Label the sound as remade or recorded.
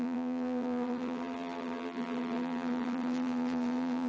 remade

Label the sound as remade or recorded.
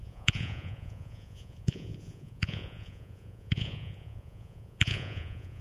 remade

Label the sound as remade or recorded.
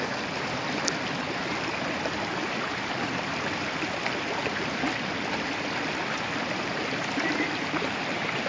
recorded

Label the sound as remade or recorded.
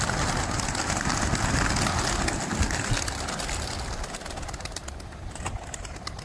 recorded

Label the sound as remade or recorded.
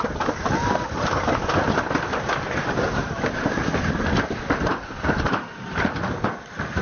recorded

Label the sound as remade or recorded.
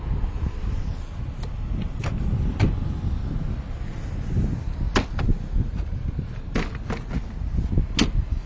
recorded